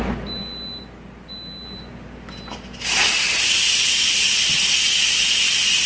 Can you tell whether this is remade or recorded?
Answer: recorded